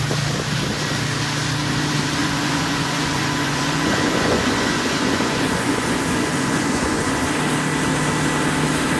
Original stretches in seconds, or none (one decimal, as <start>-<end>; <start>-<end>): 0.0-2.2; 7.2-9.0

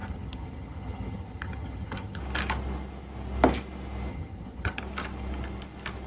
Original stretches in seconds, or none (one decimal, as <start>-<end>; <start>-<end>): 2.2-4.1; 4.8-6.1

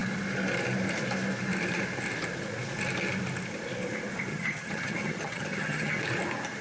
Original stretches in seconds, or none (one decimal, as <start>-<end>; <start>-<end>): 0.0-4.3; 6.0-6.6

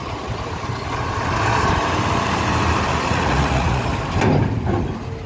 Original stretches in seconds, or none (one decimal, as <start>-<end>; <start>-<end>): 0.0-2.9; 3.8-5.3

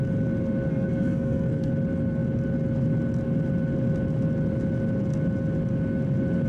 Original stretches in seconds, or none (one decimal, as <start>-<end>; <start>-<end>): 0.0-0.7; 1.7-6.5

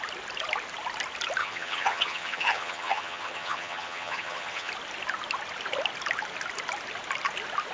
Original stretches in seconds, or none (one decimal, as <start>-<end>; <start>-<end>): 0.0-1.4; 4.7-7.7